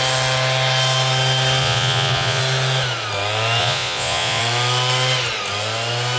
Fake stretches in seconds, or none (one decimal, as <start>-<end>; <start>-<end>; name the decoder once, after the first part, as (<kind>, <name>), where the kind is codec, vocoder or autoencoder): 1.6-2.4 (vocoder, Vocos); 3.6-4.4